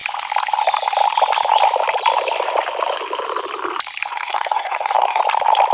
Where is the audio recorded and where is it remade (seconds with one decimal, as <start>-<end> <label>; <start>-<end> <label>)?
0.0-4.1 recorded; 4.1-5.2 remade; 5.2-5.7 recorded

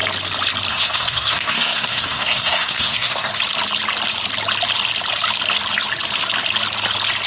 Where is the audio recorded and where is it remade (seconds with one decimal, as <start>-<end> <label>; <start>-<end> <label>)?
0.0-0.7 recorded; 0.7-3.3 remade; 3.3-7.3 recorded

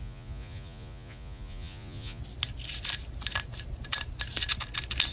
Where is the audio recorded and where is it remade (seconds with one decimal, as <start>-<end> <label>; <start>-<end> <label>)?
0.0-2.2 remade; 2.2-5.1 recorded